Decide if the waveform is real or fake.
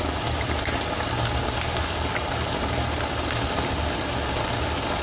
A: real